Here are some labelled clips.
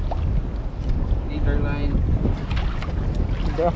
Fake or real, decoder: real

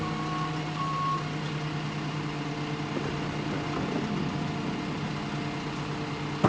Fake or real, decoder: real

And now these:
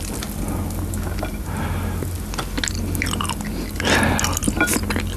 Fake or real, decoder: real